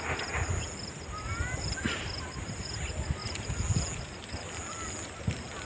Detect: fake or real real